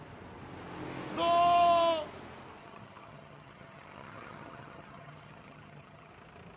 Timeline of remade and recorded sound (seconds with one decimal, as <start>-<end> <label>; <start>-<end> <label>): 0.0-2.6 recorded; 2.6-6.1 remade; 6.1-6.6 recorded